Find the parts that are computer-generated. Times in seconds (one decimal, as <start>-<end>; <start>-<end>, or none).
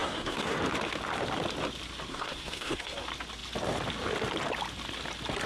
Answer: 0.0-0.6; 2.1-3.0